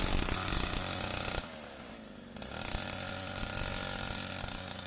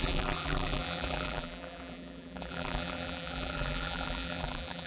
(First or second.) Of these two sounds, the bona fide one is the first